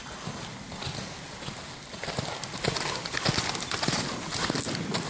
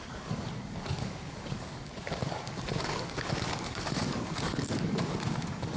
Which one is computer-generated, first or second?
second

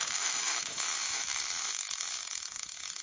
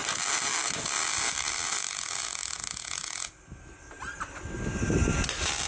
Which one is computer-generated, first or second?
first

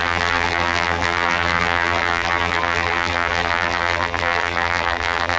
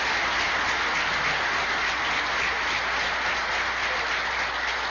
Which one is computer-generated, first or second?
first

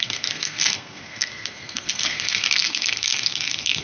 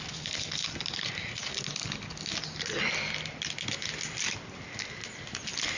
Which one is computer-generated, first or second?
first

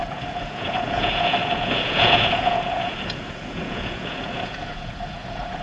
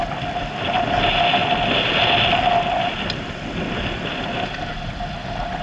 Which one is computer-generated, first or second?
first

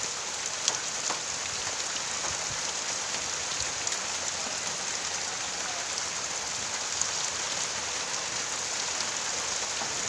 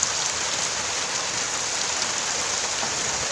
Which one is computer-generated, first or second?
second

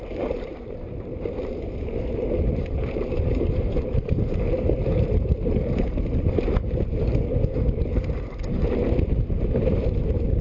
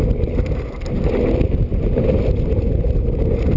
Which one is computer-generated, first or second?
first